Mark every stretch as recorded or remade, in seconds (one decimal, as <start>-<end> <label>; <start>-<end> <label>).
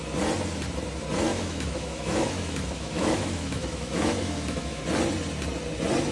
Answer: 0.0-1.3 recorded; 1.3-4.8 remade; 4.8-6.1 recorded